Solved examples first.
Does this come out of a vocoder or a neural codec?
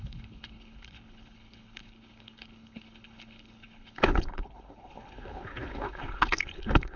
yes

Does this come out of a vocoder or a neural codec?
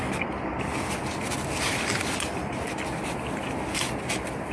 no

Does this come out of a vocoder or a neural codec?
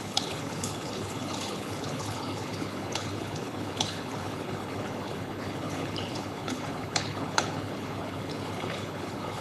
yes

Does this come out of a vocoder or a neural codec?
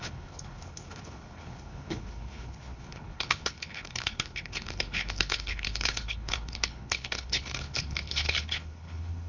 yes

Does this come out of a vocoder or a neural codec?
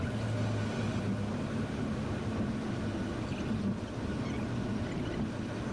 no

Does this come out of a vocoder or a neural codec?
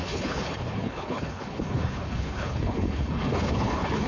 yes